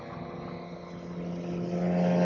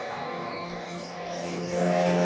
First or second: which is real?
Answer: first